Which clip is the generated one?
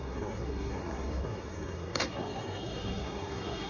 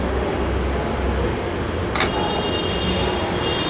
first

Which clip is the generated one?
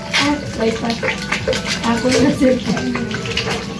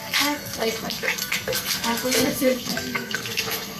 second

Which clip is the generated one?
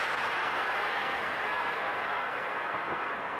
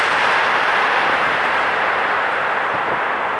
first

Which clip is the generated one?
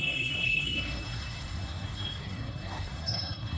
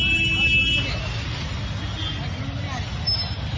first